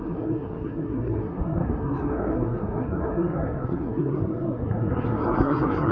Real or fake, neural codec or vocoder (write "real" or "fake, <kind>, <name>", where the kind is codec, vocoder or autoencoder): fake, codec, SNAC